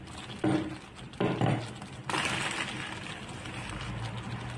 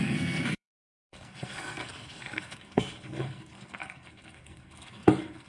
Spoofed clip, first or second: second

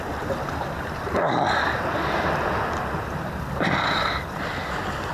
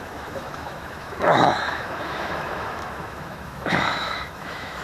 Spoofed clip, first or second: second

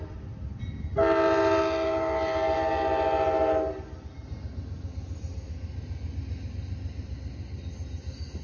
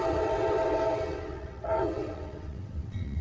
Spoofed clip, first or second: second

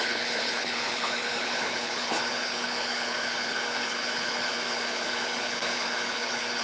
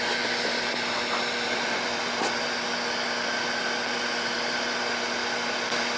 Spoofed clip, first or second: first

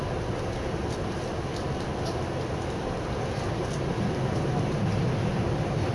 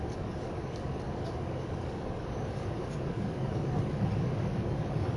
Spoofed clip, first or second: second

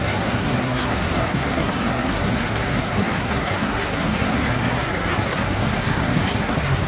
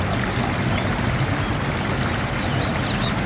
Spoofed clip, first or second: first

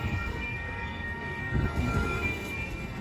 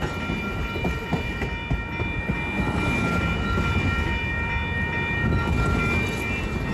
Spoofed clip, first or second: first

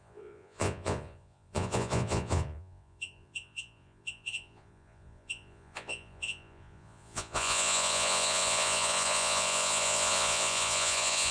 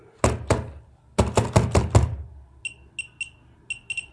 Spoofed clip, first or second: first